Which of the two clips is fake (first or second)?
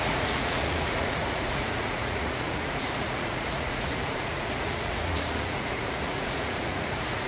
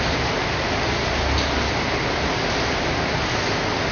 first